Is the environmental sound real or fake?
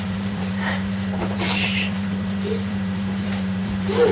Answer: fake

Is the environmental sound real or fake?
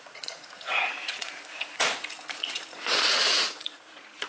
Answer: fake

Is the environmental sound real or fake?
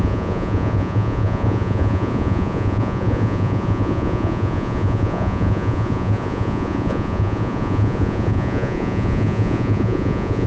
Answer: fake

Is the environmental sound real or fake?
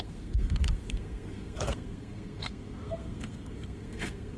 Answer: fake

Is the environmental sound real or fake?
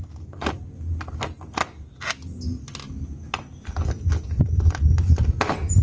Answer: real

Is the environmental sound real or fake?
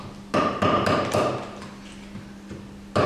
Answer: real